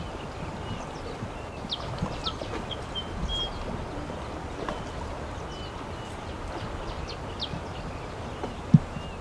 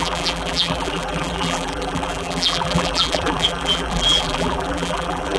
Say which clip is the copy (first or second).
second